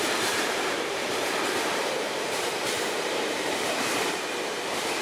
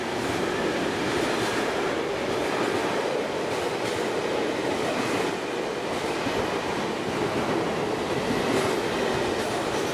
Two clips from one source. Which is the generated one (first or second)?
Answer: first